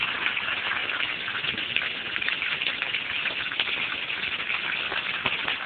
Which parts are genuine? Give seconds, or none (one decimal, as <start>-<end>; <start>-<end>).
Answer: 0.0-5.7